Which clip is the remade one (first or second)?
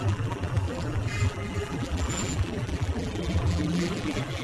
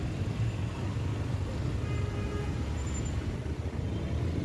first